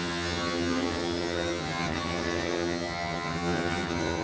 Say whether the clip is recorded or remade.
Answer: remade